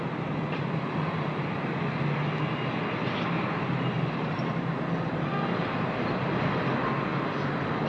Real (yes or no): yes